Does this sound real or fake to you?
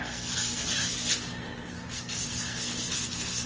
fake